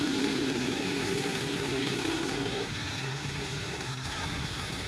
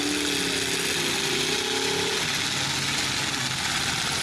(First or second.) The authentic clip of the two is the second